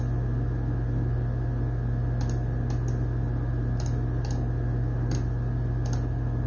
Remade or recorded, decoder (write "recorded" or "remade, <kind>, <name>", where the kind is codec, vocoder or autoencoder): recorded